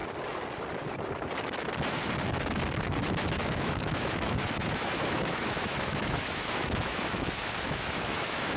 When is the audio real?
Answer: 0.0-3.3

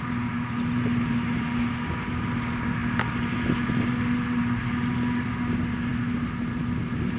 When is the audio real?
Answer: 0.0-7.2

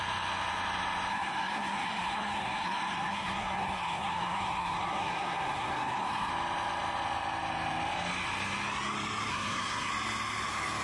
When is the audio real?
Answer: 0.0-1.1; 6.3-9.3; 9.9-10.8

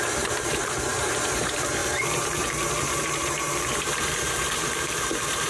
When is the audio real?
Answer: none

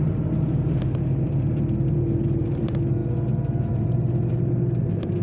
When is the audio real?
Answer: 3.0-3.7

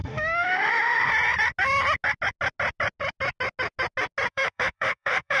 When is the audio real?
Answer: 1.1-4.3

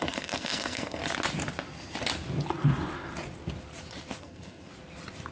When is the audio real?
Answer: 1.0-4.2; 4.7-5.3